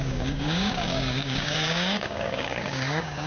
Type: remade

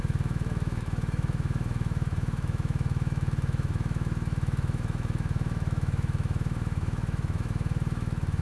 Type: remade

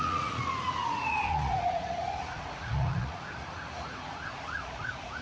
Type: remade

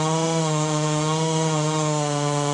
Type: remade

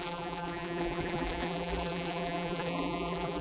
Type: remade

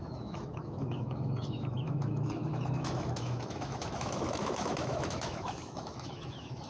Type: remade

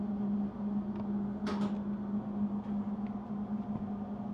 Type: recorded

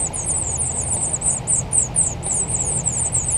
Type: recorded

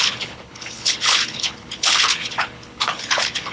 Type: remade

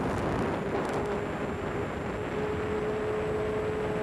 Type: recorded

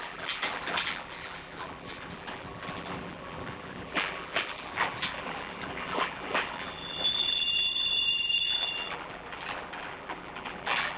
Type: remade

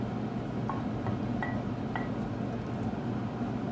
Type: recorded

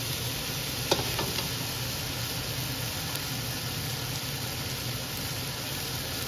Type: recorded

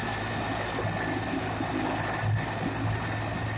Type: recorded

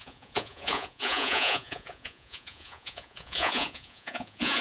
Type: remade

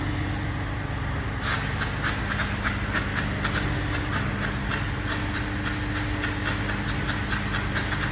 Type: recorded